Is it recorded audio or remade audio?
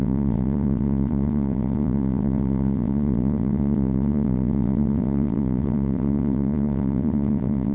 remade